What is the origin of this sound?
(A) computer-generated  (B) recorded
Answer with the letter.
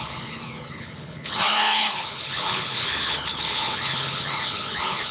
A